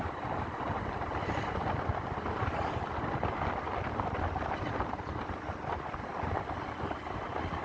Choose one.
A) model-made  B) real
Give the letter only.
B